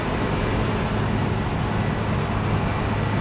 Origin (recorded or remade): recorded